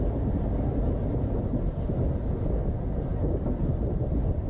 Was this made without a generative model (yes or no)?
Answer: yes